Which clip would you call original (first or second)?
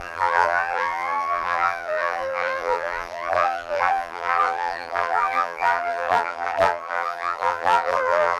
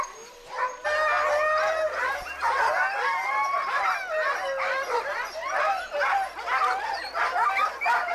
second